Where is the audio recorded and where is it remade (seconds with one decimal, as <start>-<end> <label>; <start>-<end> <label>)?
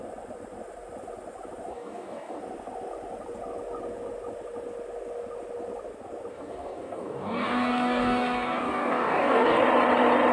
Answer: 0.0-1.7 recorded; 1.7-2.4 remade; 2.4-6.3 recorded; 6.3-9.6 remade; 9.6-10.3 recorded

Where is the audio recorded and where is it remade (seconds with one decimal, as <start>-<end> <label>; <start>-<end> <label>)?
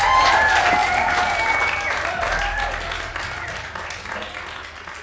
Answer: 0.0-5.0 recorded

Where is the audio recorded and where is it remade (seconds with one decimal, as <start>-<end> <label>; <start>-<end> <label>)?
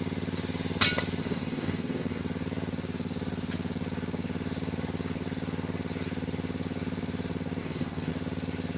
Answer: 0.0-1.2 recorded; 1.2-2.2 remade; 2.2-7.6 recorded; 7.6-8.1 remade; 8.1-8.8 recorded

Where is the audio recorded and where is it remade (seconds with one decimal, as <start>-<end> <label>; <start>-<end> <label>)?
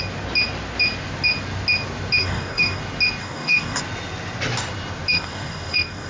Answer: 0.0-2.2 recorded; 2.2-2.8 remade; 2.8-3.2 recorded; 3.2-3.8 remade; 3.8-5.1 recorded; 5.1-6.1 remade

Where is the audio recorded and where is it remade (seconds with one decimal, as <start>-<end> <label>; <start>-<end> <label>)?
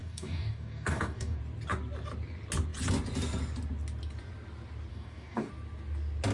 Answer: 0.0-1.4 remade; 1.4-4.9 recorded; 4.9-5.5 remade; 5.5-6.3 recorded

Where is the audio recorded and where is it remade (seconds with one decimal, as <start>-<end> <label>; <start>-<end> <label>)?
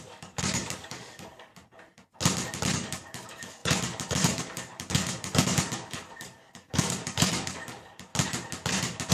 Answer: 0.0-1.5 remade; 1.5-2.7 recorded; 2.7-8.1 remade; 8.1-9.1 recorded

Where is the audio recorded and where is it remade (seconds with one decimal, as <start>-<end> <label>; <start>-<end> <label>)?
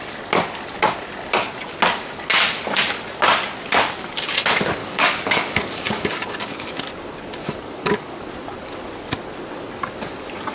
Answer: 0.0-4.8 recorded; 4.8-6.9 remade; 6.9-7.4 recorded; 7.4-8.2 remade; 8.2-10.5 recorded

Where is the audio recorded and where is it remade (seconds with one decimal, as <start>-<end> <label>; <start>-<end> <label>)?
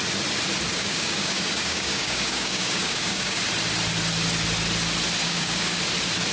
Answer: 0.0-0.7 recorded; 0.7-3.4 remade; 3.4-5.2 recorded; 5.2-5.8 remade; 5.8-6.3 recorded